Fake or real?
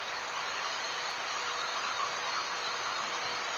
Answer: real